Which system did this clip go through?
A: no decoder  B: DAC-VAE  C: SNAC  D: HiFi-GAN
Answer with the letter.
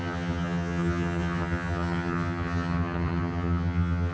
D